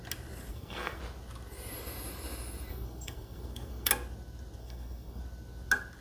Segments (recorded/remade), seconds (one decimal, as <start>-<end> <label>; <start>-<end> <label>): 0.0-0.5 recorded; 0.5-1.0 remade; 1.0-2.7 recorded; 2.7-3.9 remade; 3.9-4.6 recorded; 4.6-5.2 remade; 5.2-6.0 recorded